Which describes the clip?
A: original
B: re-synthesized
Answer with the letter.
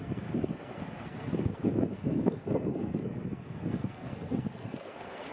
B